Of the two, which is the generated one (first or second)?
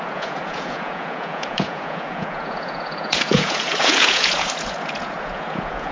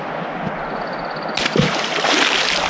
first